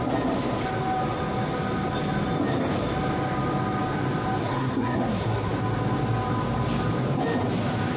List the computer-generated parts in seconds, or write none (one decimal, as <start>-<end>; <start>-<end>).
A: 4.4-5.5